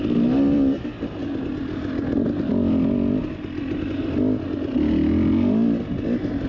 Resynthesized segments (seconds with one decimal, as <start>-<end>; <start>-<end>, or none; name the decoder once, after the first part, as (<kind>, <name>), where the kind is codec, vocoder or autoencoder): none